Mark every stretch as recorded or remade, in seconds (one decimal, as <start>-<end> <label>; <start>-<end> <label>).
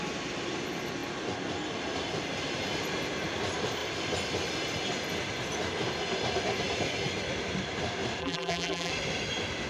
0.0-8.2 recorded; 8.2-8.9 remade; 8.9-9.7 recorded